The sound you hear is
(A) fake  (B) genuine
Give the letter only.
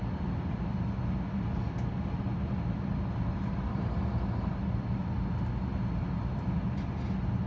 B